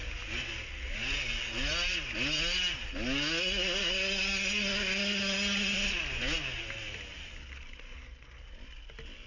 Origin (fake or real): real